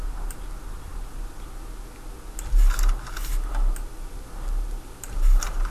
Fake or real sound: real